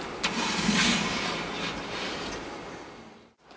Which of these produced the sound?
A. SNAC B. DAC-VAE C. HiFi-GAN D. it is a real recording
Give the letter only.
D